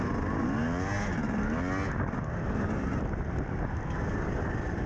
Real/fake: real